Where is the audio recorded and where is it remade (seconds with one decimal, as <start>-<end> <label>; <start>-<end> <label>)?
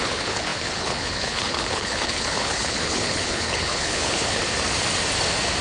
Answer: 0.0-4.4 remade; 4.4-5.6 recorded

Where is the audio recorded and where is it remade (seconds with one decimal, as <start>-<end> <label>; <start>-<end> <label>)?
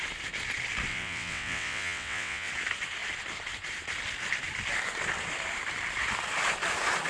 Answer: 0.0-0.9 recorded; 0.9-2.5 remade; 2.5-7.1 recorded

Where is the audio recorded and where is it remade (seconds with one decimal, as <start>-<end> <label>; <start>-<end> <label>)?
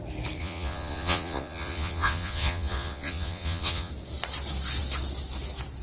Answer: 0.0-0.4 recorded; 0.4-3.9 remade; 3.9-5.8 recorded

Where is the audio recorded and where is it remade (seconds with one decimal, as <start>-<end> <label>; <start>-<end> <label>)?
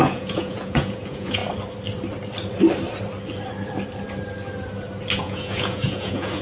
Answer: 0.0-1.4 remade; 1.4-5.2 recorded; 5.2-6.4 remade